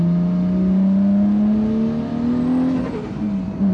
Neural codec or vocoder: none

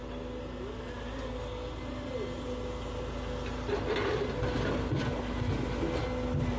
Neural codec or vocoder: none